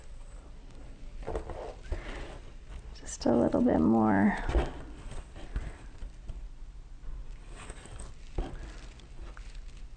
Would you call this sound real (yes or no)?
yes